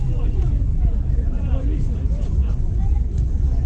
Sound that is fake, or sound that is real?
real